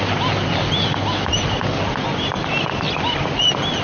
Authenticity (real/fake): real